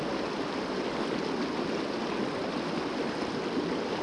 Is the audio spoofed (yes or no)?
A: no